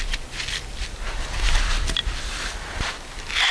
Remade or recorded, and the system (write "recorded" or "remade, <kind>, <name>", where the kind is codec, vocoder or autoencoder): recorded